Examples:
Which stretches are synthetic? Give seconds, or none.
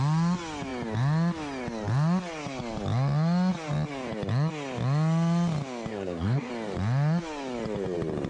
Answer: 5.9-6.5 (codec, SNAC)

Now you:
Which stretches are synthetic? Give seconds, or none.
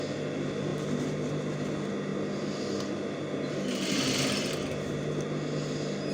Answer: none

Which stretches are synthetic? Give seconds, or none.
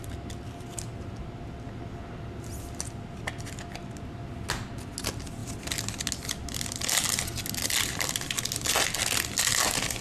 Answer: none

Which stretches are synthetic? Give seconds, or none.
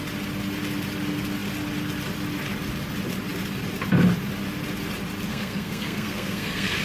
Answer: 5.3-6.8 (codec, SNAC)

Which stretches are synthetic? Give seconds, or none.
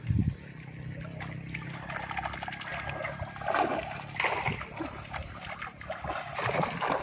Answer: none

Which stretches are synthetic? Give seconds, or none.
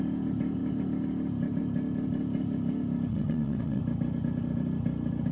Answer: 3.1-3.8 (vocoder, Vocos)